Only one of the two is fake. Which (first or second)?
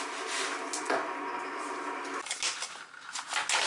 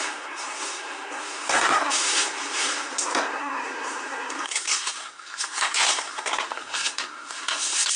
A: second